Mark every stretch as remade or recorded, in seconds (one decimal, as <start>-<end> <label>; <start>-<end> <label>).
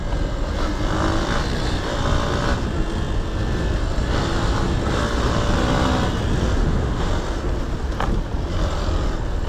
0.0-6.6 recorded; 6.6-7.1 remade; 7.1-9.5 recorded